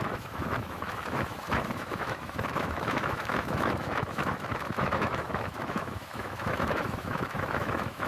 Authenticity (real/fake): fake